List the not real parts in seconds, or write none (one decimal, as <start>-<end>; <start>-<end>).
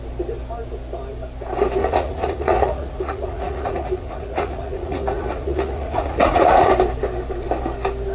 1.8-6.7